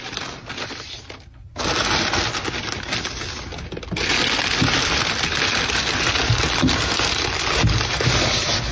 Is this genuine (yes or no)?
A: yes